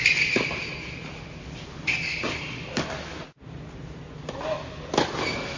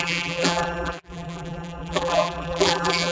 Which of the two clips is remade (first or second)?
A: second